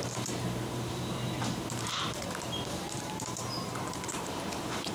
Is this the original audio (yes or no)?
no